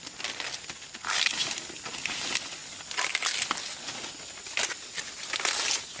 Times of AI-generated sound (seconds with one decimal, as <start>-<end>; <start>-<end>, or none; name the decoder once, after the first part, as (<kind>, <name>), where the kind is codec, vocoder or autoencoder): none